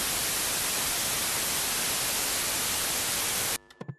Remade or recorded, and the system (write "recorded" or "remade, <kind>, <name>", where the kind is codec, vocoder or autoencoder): recorded